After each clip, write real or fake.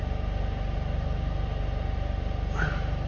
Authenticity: real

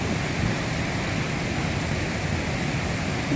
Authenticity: real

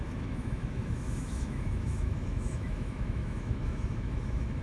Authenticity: fake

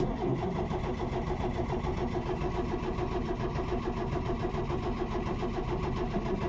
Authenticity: real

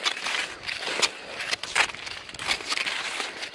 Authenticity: real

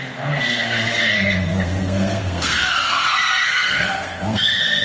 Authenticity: fake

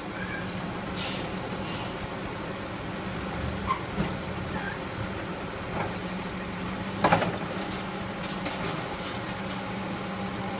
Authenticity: real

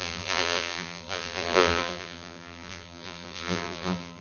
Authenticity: fake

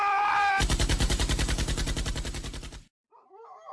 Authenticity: fake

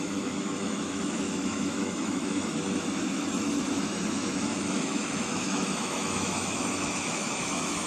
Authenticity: fake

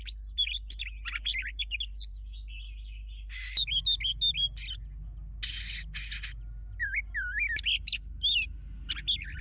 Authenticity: real